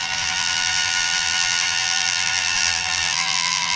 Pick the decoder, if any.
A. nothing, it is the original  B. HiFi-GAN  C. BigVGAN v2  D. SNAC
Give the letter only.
C